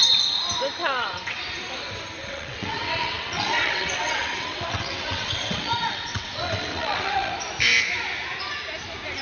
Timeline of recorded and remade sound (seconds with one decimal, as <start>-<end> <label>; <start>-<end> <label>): 0.0-0.8 recorded; 0.8-1.4 remade; 1.4-2.2 recorded; 2.2-7.3 remade; 7.3-9.2 recorded